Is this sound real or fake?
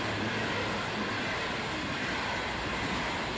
real